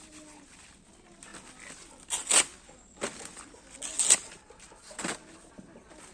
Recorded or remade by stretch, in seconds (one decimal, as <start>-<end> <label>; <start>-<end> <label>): 0.0-4.2 recorded; 4.2-5.0 remade; 5.0-6.1 recorded